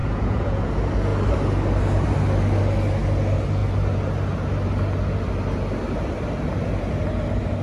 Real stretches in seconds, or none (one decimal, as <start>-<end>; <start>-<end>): 0.6-7.6